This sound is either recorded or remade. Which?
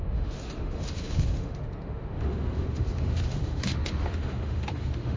remade